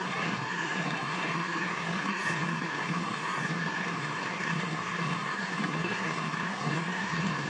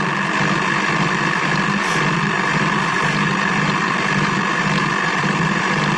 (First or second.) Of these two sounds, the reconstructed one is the first